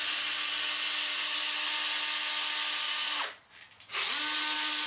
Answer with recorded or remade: recorded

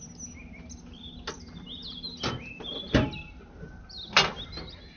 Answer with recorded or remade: recorded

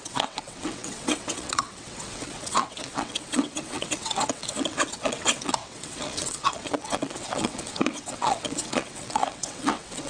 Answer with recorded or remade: remade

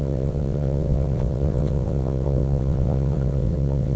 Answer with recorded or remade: remade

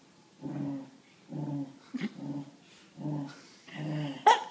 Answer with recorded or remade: recorded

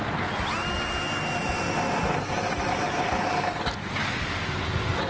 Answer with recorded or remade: recorded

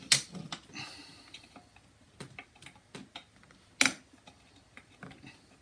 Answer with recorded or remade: recorded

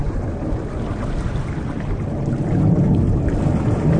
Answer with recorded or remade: recorded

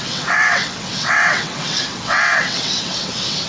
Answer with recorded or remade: remade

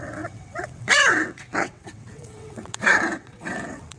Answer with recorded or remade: remade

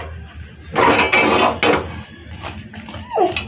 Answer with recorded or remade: recorded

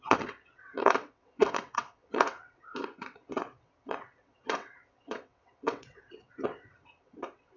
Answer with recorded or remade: remade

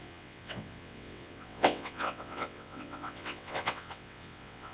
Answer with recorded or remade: remade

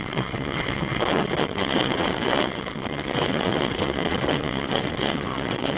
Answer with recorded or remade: remade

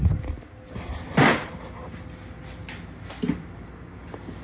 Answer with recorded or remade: recorded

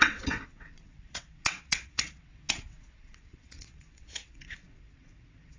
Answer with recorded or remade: remade